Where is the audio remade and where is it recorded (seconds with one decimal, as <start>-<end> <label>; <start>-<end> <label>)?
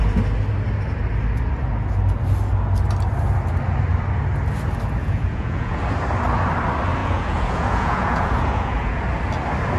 0.0-5.0 recorded; 5.0-5.8 remade; 5.8-7.0 recorded; 7.0-9.0 remade; 9.0-9.8 recorded